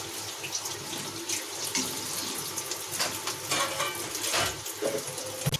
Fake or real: real